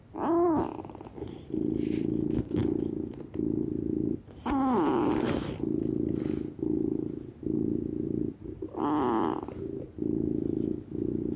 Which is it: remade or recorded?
recorded